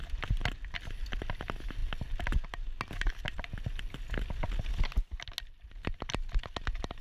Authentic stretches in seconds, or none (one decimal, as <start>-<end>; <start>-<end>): 0.0-7.0